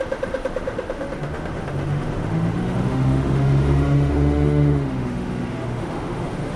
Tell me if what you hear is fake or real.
fake